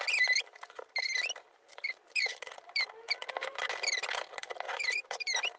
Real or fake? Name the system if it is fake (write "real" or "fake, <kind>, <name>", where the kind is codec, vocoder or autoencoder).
real